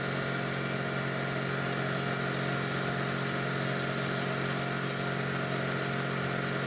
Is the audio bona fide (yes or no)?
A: yes